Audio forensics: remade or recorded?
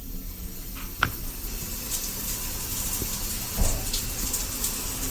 recorded